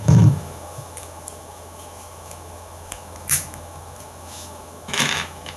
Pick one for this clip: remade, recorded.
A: remade